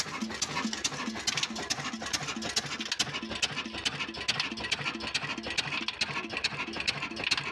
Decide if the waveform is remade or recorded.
recorded